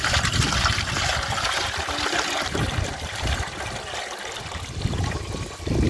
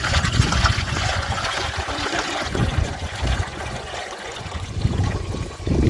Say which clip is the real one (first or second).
first